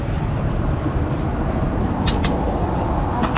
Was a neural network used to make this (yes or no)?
no